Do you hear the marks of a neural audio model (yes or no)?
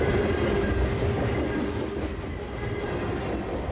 no